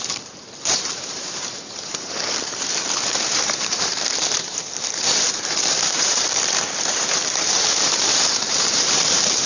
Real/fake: fake